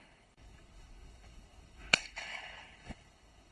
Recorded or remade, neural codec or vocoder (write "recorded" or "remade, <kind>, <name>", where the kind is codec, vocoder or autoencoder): remade, codec, HILCodec